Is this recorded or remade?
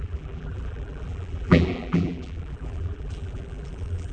remade